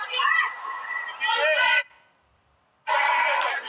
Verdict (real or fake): real